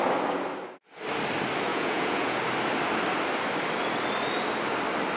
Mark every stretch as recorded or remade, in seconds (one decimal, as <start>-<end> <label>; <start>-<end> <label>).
0.0-1.7 recorded; 1.7-2.4 remade; 2.4-5.2 recorded